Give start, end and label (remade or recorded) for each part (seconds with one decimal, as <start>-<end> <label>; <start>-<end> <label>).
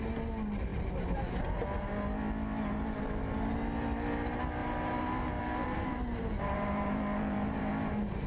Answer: 0.0-4.6 recorded; 4.6-7.7 remade; 7.7-8.3 recorded